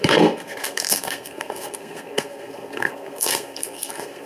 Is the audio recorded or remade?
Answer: remade